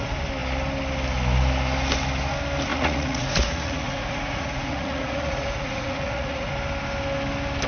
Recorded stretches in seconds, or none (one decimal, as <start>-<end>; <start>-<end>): 0.0-2.7; 6.5-7.7